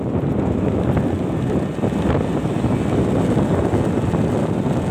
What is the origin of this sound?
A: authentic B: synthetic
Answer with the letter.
A